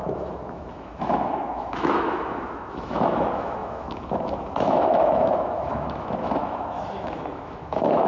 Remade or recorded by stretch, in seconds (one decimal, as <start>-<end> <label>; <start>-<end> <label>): 0.0-8.1 remade